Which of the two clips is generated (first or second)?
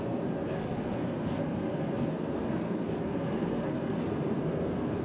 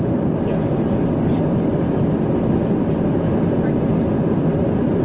first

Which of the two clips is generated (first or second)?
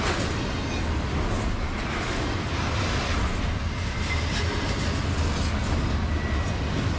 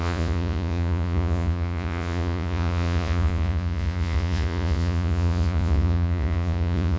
second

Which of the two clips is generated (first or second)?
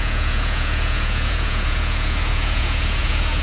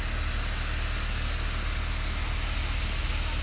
first